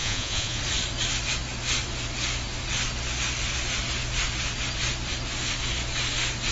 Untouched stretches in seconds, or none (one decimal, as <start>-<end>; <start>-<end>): 0.6-6.5